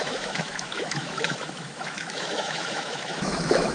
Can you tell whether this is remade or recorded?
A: remade